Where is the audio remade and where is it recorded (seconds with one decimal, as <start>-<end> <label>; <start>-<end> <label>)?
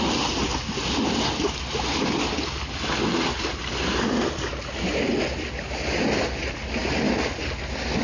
0.0-8.0 recorded